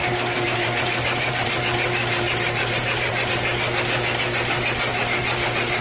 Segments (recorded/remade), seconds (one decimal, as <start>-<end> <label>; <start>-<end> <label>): 0.0-1.5 remade; 1.5-2.0 recorded; 2.0-3.3 remade; 3.3-4.9 recorded; 4.9-5.8 remade